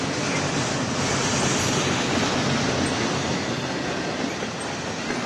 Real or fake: real